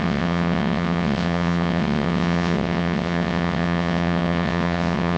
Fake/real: fake